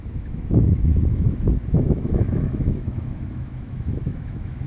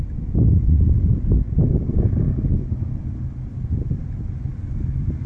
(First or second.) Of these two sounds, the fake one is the first